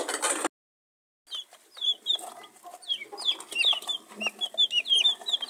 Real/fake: real